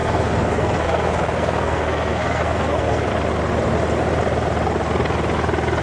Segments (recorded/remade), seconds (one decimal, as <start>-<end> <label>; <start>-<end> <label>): 0.0-3.1 remade; 3.1-5.8 recorded